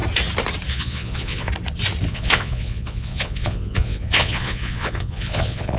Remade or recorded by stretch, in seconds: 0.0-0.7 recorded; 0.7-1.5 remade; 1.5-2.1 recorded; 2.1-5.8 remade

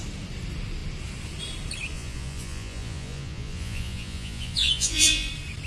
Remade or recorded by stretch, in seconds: 0.0-1.9 recorded; 1.9-5.3 remade; 5.3-5.7 recorded